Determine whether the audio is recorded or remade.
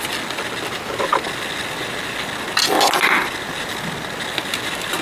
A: recorded